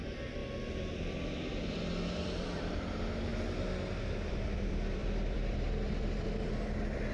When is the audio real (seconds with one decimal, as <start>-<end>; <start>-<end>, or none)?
0.4-1.7; 3.3-4.3